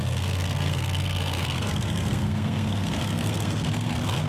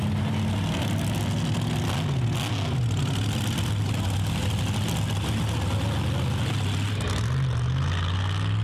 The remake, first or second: first